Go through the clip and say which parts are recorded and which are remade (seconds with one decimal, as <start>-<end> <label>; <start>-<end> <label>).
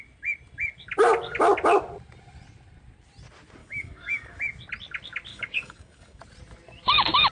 0.0-3.6 recorded; 3.6-4.4 remade; 4.4-5.3 recorded; 5.3-6.2 remade; 6.2-7.3 recorded